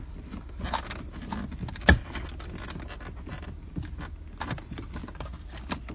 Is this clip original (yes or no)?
yes